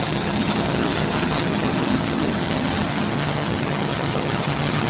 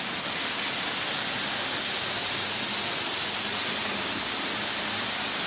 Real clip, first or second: second